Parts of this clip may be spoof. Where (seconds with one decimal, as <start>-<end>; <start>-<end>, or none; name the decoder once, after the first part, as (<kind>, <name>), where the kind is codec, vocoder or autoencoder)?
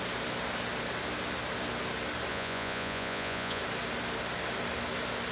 2.3-3.6 (vocoder, Vocos)